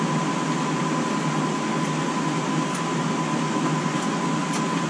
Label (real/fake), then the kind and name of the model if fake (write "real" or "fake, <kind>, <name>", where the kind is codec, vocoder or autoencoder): real